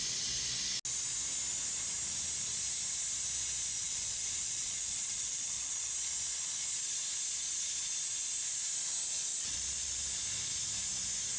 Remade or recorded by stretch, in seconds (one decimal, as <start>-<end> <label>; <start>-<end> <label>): 0.0-3.7 recorded; 3.7-6.1 remade; 6.1-9.3 recorded; 9.3-10.0 remade; 10.0-11.4 recorded